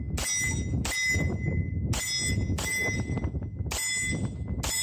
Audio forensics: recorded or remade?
recorded